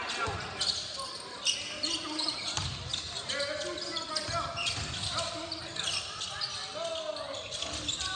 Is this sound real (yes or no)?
yes